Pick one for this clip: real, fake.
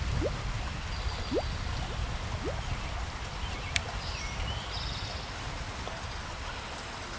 real